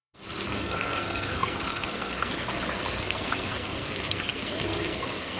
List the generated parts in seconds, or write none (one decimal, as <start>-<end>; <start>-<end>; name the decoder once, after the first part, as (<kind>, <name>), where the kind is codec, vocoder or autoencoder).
0.0-5.4 (codec, SNAC)